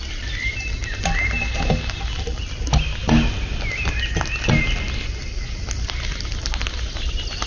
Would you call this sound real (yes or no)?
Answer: yes